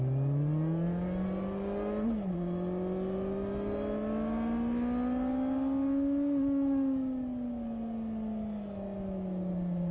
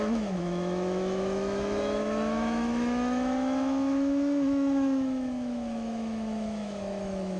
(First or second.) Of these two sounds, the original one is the first